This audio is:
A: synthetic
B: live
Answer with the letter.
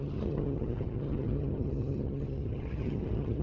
A